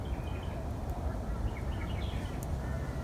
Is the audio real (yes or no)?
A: no